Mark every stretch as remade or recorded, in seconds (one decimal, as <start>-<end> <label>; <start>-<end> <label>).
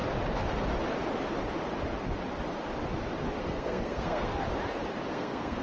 0.0-3.4 recorded; 3.4-4.3 remade; 4.3-5.1 recorded; 5.1-5.6 remade